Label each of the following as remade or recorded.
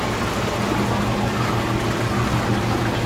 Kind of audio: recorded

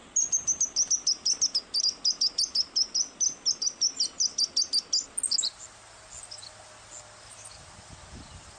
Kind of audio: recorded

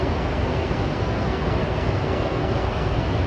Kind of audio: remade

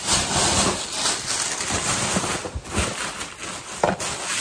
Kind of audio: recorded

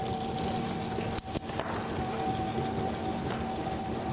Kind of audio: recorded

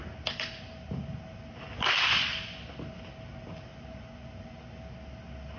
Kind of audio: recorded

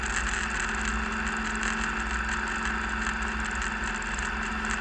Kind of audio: recorded